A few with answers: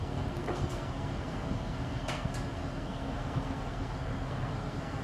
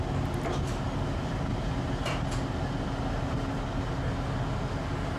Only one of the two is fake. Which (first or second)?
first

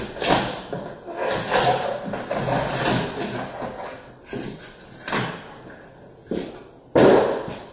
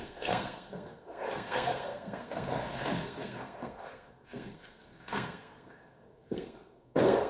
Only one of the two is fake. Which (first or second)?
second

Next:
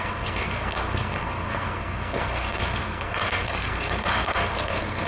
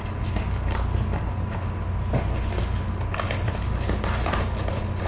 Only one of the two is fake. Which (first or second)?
first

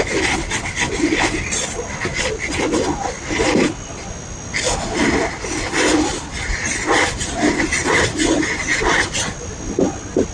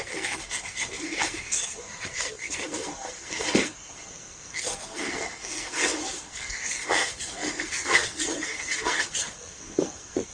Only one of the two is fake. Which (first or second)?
second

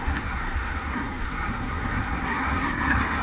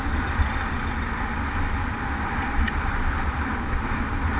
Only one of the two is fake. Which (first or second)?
first